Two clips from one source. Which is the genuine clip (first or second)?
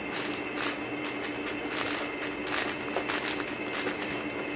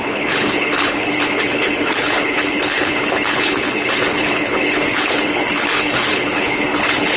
first